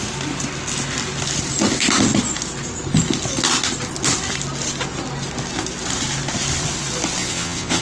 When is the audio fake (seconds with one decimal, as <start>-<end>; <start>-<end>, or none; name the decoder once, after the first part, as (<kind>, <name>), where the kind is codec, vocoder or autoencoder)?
7.2-7.8 (vocoder, WaveNeXt)